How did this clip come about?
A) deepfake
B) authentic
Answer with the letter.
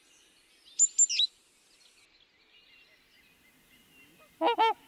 B